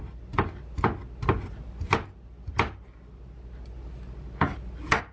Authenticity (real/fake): real